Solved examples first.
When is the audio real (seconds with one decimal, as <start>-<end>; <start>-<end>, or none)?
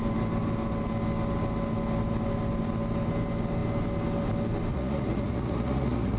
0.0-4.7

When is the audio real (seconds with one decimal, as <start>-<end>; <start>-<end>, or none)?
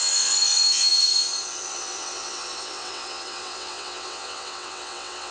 none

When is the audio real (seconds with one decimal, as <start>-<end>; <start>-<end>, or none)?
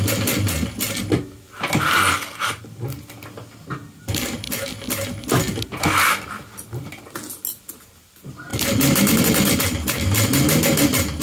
0.0-11.2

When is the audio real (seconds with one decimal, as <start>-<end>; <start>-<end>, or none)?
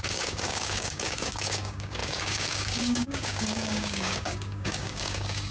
none